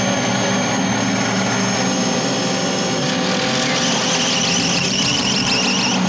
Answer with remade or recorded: recorded